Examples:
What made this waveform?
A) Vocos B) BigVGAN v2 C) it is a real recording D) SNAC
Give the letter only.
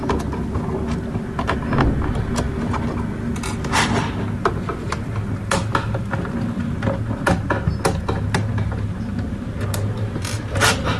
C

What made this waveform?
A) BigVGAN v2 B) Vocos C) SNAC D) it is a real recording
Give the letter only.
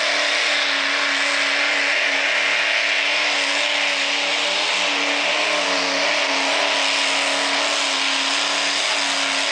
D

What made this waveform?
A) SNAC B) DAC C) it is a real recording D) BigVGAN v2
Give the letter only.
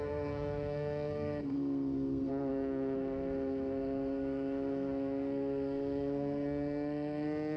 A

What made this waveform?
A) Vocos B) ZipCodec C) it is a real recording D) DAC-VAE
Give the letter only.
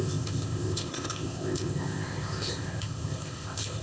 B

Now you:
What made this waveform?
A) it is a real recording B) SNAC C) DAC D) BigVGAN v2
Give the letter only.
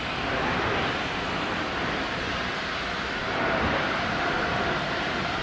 A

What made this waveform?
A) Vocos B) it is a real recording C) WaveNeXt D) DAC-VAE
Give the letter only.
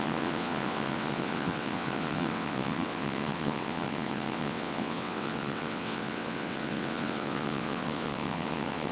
C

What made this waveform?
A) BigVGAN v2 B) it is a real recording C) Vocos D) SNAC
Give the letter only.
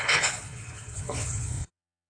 C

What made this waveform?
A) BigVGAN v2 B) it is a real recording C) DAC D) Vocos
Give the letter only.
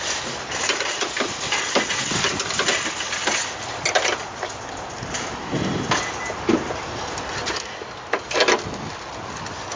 B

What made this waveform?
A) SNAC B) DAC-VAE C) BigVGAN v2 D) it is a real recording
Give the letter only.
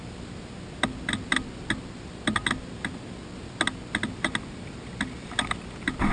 D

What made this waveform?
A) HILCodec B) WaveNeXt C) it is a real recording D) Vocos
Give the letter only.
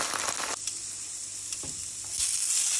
C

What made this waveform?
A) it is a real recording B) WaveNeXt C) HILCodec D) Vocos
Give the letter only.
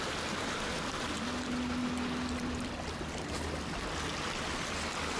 A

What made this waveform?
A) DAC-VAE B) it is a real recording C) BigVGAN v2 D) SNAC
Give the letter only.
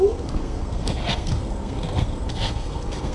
D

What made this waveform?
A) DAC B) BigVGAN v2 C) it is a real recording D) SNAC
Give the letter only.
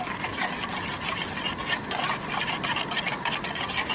C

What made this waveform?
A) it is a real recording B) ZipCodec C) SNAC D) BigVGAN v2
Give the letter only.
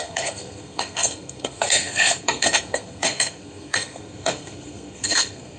C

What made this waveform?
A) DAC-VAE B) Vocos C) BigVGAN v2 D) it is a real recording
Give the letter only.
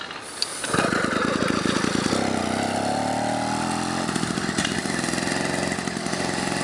D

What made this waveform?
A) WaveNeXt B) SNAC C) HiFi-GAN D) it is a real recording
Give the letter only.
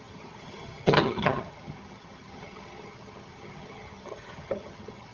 C